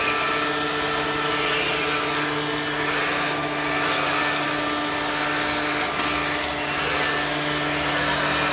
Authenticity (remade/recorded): recorded